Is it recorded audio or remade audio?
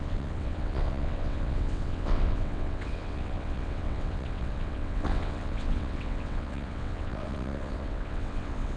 remade